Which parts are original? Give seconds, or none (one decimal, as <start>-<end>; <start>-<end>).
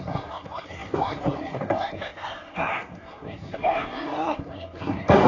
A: none